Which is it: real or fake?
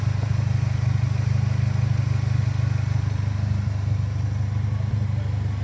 real